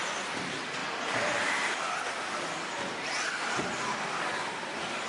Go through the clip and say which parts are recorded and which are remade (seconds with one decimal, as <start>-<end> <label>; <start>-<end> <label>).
0.0-5.1 recorded